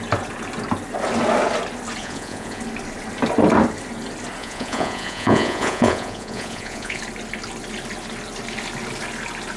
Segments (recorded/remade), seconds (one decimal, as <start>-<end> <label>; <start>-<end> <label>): 0.0-2.0 recorded; 2.0-2.6 remade; 2.6-4.4 recorded; 4.4-7.0 remade; 7.0-9.6 recorded